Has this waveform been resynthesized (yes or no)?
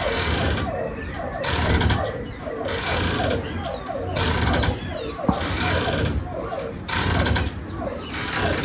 no